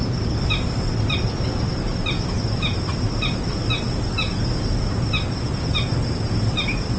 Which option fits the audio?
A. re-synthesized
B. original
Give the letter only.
B